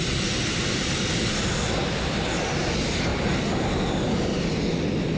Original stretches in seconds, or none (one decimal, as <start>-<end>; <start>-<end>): 0.0-5.2